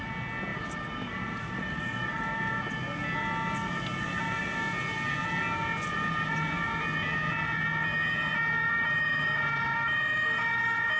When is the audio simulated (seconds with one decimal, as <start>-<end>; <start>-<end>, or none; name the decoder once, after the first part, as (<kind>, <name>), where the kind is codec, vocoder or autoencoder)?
0.5-2.6 (vocoder, BigVGAN v2)